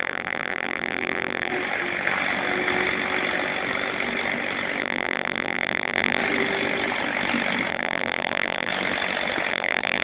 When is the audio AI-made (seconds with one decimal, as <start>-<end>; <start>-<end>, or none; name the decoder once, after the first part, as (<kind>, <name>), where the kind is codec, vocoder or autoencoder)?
0.0-1.5 (vocoder, BigVGAN v2); 4.8-6.2; 7.7-8.7; 9.5-10.0